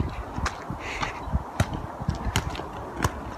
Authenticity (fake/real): real